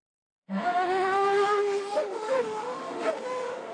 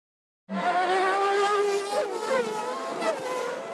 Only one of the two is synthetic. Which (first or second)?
first